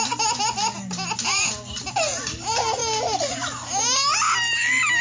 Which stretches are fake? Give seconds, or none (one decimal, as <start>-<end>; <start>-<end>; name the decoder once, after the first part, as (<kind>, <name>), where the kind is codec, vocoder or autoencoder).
none